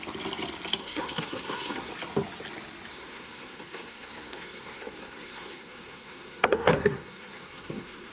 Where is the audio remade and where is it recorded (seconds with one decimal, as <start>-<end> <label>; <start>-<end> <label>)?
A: 0.0-0.8 recorded; 0.8-1.9 remade; 1.9-2.9 recorded; 2.9-8.1 remade